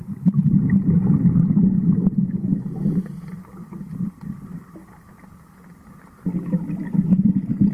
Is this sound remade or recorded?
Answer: recorded